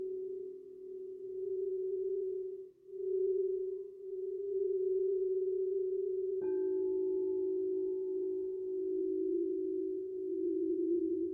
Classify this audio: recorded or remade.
remade